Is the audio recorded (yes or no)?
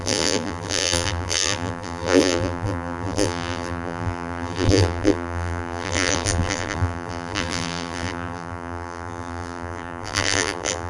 no